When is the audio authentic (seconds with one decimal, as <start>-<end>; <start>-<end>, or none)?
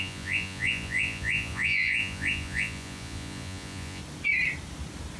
4.0-5.2